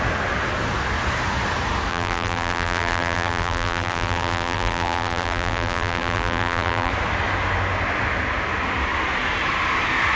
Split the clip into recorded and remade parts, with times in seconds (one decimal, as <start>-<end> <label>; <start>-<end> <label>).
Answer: 0.0-1.9 recorded; 1.9-6.9 remade; 6.9-10.2 recorded